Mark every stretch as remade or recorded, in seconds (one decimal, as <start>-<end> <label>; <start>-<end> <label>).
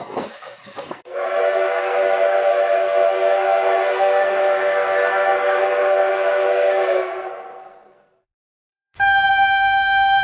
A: 0.0-10.2 remade